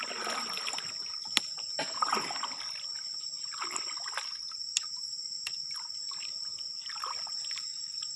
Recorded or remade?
recorded